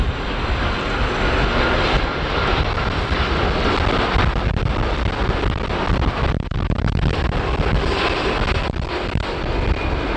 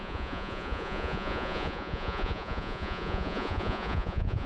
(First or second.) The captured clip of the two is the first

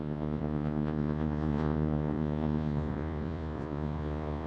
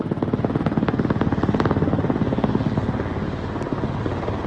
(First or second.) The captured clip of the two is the second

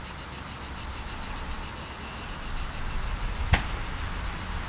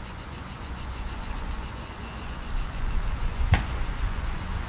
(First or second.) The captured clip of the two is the first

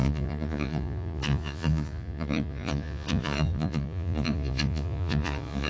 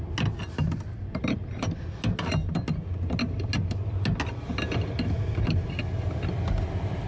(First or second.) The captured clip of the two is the second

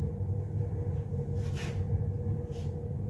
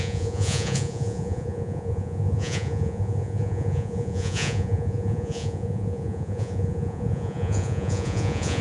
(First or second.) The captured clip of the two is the first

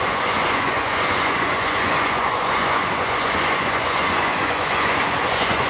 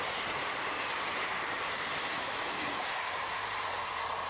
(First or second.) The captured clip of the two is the second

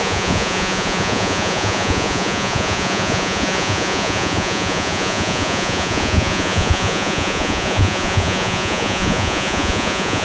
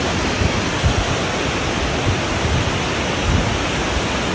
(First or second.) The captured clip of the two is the second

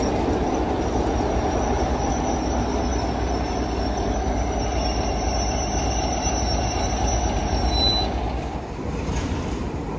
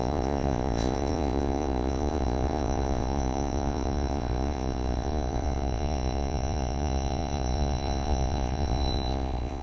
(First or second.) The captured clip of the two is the first